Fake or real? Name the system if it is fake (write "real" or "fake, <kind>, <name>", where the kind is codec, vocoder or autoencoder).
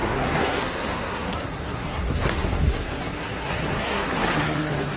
fake, codec, SNAC